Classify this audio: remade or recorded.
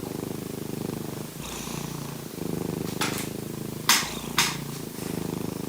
recorded